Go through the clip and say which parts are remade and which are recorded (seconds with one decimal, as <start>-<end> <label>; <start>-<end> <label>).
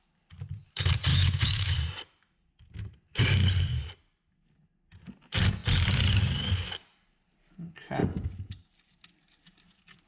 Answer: 0.0-1.1 recorded; 1.1-1.7 remade; 1.7-10.1 recorded